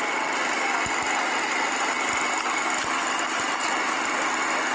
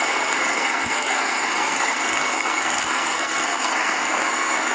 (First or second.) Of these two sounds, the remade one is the second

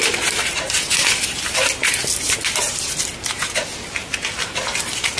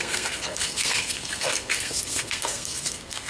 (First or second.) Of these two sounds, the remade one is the second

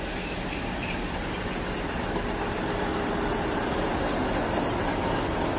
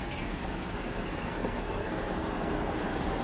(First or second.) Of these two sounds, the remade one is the second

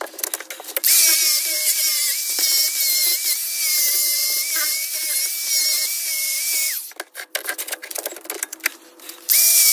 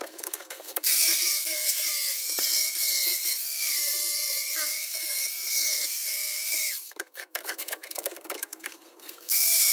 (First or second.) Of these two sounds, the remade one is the second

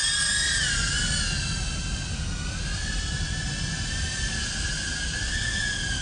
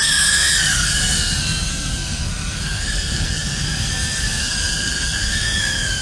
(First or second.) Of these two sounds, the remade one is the second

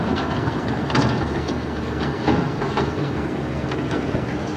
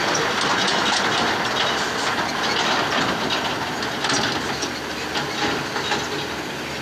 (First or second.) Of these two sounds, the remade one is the first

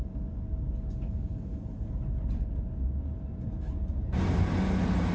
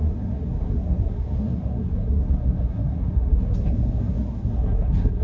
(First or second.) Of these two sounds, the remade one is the second